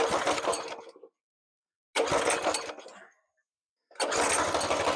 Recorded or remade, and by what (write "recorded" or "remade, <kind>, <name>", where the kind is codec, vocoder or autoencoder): recorded